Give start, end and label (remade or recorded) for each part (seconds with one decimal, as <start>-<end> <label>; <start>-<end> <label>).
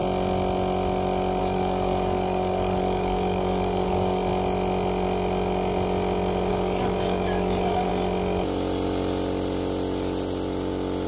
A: 0.0-1.4 recorded; 1.4-4.3 remade; 4.3-6.5 recorded; 6.5-7.9 remade; 7.9-11.1 recorded